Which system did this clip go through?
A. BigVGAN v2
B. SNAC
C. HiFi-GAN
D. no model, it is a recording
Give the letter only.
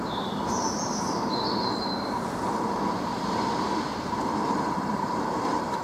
A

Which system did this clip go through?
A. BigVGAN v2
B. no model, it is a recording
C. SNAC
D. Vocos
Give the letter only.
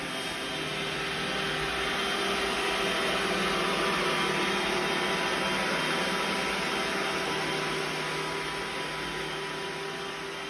B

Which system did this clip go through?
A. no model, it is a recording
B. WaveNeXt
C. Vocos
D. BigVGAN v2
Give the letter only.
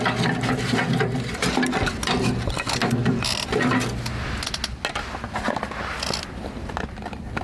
A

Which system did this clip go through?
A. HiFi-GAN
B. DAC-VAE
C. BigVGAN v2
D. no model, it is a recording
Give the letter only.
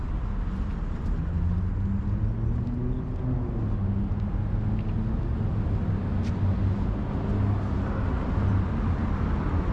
D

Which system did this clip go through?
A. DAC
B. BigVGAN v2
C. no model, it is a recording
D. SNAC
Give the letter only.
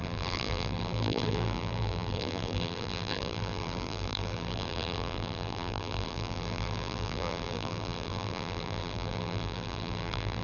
B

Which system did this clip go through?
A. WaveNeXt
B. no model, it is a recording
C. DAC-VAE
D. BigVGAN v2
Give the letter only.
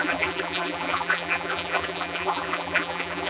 D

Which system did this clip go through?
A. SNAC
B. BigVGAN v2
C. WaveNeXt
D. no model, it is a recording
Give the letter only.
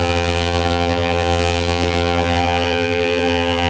B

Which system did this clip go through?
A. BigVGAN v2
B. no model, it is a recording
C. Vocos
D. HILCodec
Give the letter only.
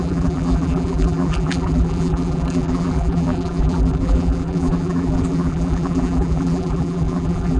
A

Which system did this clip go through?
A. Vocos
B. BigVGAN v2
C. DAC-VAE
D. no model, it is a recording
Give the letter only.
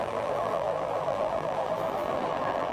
B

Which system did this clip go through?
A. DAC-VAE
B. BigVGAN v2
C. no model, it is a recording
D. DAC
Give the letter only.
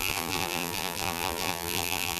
B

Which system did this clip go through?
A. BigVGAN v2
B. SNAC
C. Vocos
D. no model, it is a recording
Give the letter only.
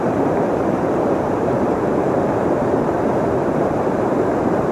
A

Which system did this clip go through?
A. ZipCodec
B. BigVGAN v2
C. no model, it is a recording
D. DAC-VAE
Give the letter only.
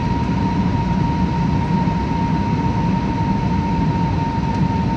C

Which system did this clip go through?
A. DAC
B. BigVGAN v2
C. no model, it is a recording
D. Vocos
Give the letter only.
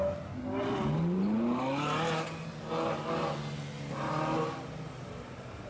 C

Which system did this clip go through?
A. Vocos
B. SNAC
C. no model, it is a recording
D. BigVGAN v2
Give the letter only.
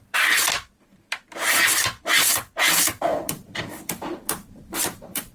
D